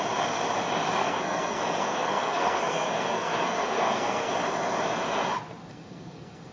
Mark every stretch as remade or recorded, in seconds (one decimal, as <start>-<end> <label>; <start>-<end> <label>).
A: 0.0-1.0 recorded; 1.0-4.3 remade; 4.3-5.7 recorded; 5.7-6.5 remade